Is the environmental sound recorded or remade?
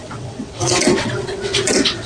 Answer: remade